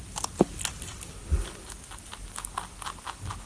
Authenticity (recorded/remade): recorded